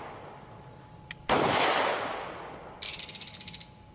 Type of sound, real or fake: real